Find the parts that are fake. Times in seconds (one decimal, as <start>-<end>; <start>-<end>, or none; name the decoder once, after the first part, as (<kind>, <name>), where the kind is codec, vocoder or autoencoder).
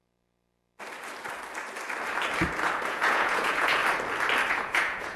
2.9-3.8 (vocoder, Vocos); 4.5-5.2